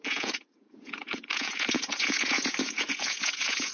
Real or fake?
fake